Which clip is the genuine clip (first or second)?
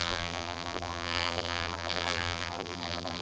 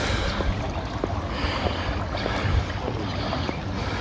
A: second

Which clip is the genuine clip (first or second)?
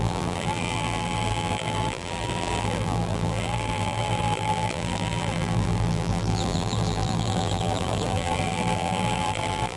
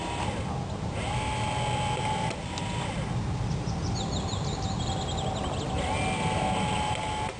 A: second